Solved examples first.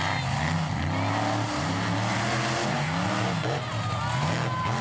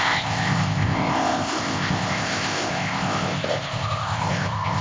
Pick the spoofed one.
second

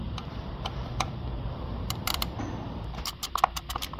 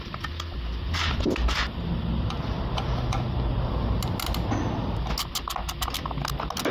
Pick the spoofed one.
first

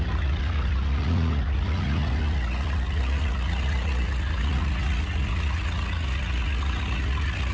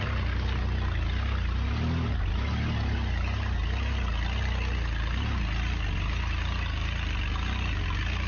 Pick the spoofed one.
first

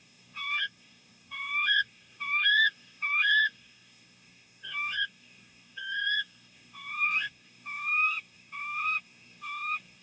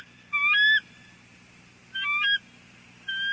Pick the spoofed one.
first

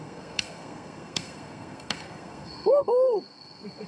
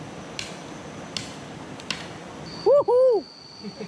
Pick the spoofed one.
first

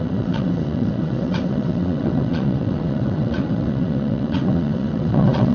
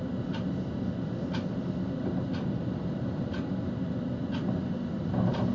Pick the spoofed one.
first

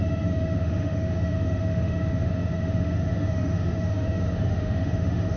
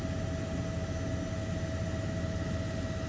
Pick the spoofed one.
first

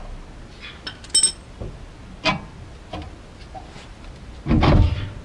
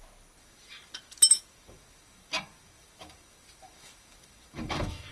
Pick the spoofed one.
second